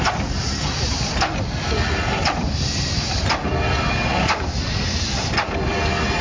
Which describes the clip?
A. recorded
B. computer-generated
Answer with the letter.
A